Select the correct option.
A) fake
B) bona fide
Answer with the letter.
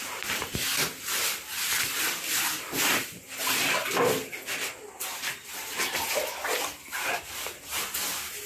B